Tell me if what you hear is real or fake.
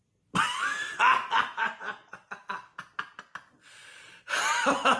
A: real